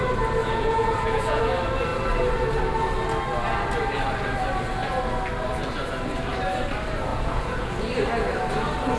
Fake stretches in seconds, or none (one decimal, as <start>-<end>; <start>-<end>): 0.4-1.4; 7.1-7.7